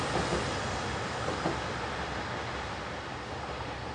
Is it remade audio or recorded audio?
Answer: recorded